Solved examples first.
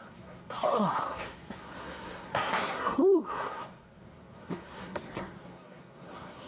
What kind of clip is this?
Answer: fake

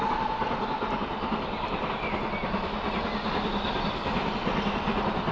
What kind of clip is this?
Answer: real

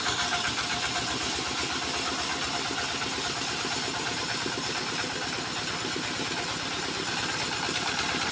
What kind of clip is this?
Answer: real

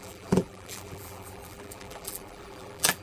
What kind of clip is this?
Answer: fake